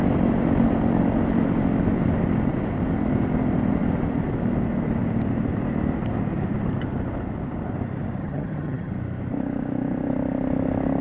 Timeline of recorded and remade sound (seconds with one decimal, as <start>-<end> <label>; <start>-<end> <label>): 0.0-8.2 recorded; 8.2-8.9 remade; 8.9-11.0 recorded